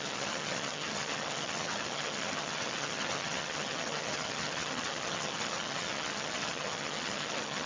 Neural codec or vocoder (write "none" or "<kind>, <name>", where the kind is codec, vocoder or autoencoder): vocoder, HiFi-GAN